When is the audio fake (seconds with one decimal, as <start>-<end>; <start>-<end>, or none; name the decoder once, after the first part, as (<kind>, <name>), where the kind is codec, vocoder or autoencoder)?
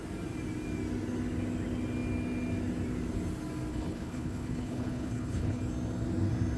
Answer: 3.7-5.6 (codec, HILCodec)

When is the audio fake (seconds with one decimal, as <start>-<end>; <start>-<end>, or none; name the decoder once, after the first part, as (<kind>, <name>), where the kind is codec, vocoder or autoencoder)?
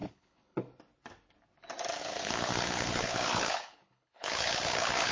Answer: 0.0-0.6 (codec, HILCodec); 2.0-5.1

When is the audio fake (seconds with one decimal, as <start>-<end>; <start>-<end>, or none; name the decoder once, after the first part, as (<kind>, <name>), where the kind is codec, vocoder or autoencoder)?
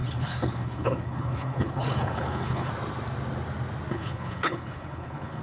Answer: 0.0-2.7 (codec, HILCodec); 3.9-5.4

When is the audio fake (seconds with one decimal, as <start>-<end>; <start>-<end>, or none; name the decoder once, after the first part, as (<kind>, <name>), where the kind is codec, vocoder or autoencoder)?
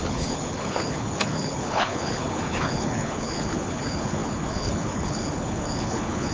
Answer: 0.0-6.3 (codec, HILCodec)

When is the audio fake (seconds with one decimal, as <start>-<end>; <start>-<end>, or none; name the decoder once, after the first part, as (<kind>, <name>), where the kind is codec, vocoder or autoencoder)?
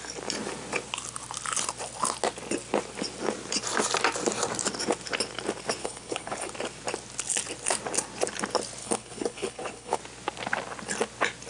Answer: 5.8-6.5 (codec, HILCodec); 8.8-10.0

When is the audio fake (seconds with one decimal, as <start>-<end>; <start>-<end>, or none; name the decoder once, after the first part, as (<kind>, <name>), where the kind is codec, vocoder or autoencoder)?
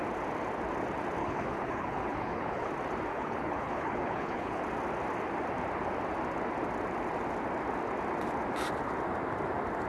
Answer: 1.2-2.7 (codec, HILCodec); 3.1-4.6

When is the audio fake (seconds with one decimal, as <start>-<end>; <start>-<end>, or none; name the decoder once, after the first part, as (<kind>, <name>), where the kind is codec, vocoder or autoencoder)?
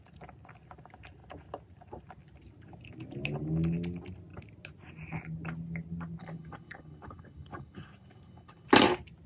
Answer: 6.2-8.7 (codec, HILCodec)